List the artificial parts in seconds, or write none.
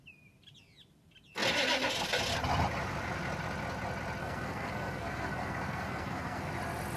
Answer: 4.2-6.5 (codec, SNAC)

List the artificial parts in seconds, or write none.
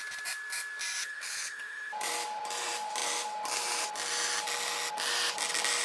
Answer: 1.0-1.9 (codec, HILCodec)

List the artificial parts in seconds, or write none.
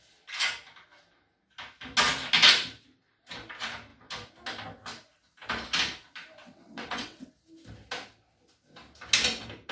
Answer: 6.4-7.3 (vocoder, WaveNeXt)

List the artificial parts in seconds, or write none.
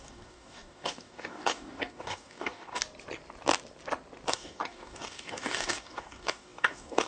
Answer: 0.0-2.8 (codec, DAC); 4.3-7.1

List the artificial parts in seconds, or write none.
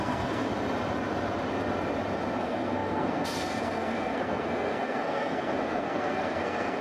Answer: 0.0-0.5 (codec, SNAC); 2.4-6.8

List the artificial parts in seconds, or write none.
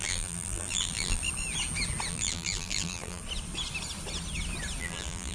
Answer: 0.0-1.2 (vocoder, BigVGAN v2); 2.1-3.2; 4.8-5.3